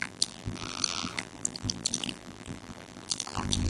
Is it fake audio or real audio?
fake